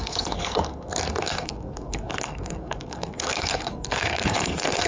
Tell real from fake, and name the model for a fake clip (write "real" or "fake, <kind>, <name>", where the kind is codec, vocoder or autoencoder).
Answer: fake, codec, SNAC